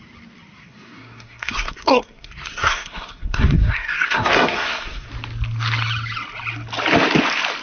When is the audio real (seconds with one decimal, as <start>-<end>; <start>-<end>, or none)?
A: 0.0-0.5; 5.1-7.6